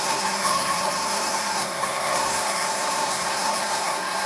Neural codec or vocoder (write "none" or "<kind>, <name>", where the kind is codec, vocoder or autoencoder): codec, SNAC